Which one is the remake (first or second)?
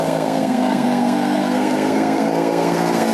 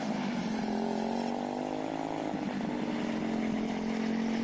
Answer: first